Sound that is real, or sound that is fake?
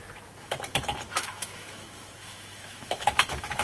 fake